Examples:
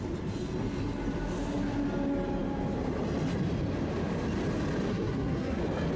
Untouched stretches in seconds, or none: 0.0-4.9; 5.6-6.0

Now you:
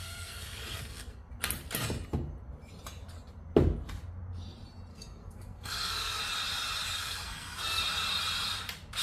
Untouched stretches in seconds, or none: 1.3-4.9; 6.2-7.0; 7.8-9.0

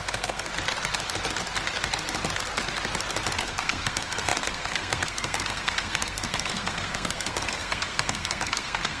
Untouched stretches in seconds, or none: 0.5-3.4

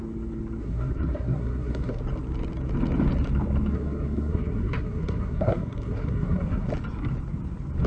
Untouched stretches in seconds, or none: 0.0-0.6; 2.0-3.7; 6.7-7.9